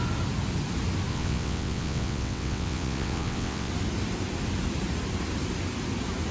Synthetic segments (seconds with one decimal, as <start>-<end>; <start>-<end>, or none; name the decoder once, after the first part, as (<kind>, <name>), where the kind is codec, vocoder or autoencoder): 1.1-3.7 (vocoder, WaveNeXt)